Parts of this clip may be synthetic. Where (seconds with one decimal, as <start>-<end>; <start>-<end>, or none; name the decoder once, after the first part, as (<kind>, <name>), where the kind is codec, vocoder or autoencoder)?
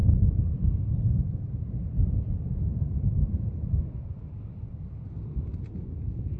none